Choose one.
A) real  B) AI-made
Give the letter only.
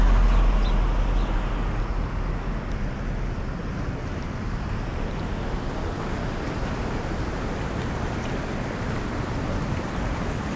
A